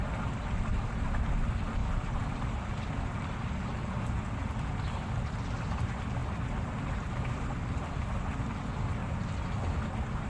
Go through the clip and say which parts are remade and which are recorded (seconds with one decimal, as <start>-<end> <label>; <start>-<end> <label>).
0.0-6.2 recorded; 6.2-7.4 remade; 7.4-10.3 recorded